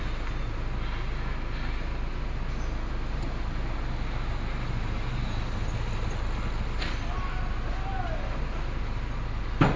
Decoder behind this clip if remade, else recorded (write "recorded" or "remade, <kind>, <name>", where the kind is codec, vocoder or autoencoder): recorded